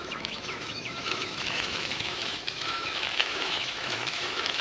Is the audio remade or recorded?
remade